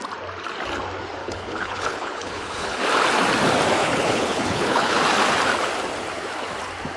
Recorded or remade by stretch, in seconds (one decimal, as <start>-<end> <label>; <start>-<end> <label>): 0.0-1.2 recorded; 1.2-2.8 remade; 2.8-3.8 recorded; 3.8-5.0 remade; 5.0-7.0 recorded